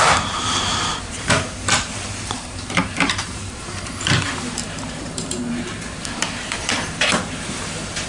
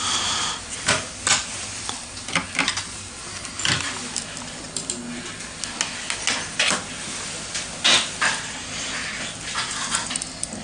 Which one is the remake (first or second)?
first